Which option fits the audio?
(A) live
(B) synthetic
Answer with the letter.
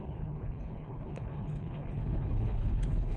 B